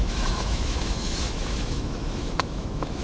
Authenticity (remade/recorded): remade